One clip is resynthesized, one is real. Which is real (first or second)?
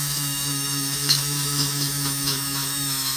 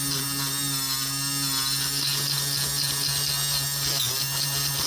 second